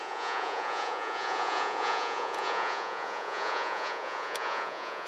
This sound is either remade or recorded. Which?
remade